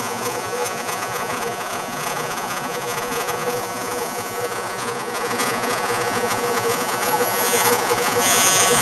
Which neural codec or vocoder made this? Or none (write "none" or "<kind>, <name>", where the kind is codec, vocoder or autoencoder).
vocoder, Vocos